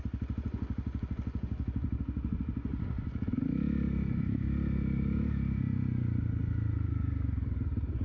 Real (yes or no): yes